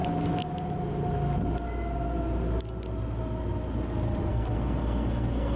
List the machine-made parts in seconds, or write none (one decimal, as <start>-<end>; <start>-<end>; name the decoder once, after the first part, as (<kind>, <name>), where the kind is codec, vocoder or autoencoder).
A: 4.3-5.6 (codec, SNAC)